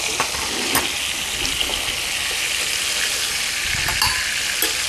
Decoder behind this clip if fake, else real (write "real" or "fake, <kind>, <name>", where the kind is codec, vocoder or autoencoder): real